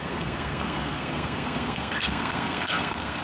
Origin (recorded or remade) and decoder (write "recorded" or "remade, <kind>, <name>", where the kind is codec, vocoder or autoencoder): remade, codec, SNAC